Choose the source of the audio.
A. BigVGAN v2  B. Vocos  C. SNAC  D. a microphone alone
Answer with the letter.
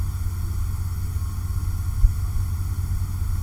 D